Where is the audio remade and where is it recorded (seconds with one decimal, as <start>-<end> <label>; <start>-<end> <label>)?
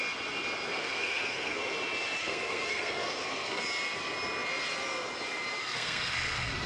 0.0-0.7 recorded; 0.7-1.6 remade; 1.6-2.2 recorded; 2.2-3.6 remade; 3.6-5.6 recorded; 5.6-6.7 remade